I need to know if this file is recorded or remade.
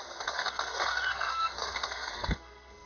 remade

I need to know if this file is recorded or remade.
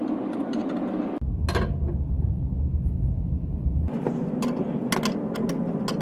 recorded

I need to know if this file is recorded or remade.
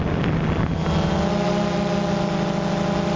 recorded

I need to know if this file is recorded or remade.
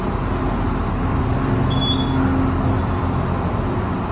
recorded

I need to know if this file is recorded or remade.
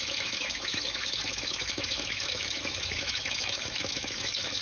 remade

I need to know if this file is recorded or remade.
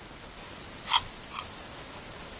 recorded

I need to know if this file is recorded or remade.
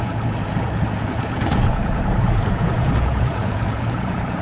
remade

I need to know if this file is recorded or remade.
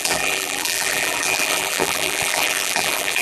remade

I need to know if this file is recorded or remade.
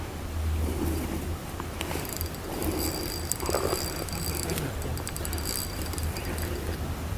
remade